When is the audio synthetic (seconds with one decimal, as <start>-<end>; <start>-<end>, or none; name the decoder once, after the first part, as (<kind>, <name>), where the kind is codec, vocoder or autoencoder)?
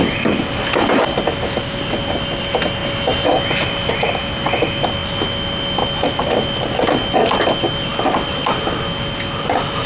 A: none